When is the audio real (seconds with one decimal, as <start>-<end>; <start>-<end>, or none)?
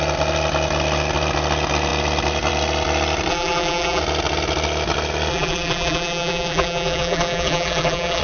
0.0-3.3; 4.0-5.3